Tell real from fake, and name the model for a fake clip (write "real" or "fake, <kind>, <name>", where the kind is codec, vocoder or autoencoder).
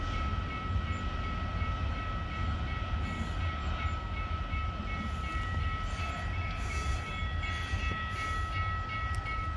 real